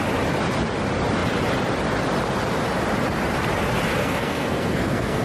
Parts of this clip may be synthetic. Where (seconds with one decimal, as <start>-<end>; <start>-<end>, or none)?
4.0-5.2